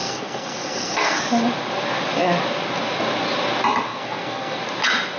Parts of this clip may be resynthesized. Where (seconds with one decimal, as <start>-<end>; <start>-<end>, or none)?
0.0-1.2; 3.9-4.6